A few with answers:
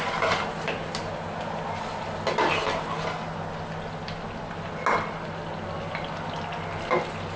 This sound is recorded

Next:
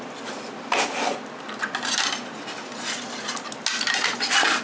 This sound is recorded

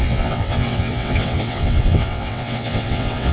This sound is remade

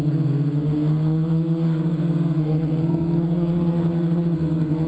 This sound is remade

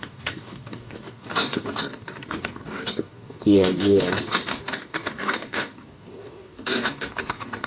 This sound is remade